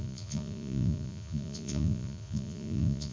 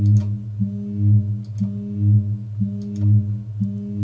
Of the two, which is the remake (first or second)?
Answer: first